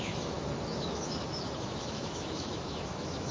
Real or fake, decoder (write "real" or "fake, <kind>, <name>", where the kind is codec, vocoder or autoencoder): fake, autoencoder, DAC-VAE